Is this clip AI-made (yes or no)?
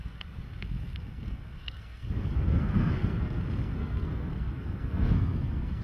yes